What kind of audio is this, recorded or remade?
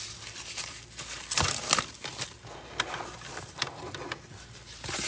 recorded